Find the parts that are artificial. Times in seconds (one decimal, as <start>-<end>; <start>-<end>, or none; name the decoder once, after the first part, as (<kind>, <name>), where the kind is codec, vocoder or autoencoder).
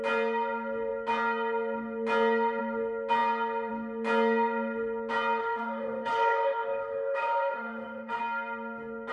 5.4-8.2 (autoencoder, DAC-VAE)